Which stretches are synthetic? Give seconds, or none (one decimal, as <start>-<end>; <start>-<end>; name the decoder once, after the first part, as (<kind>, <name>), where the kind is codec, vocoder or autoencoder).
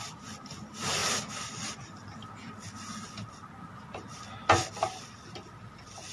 none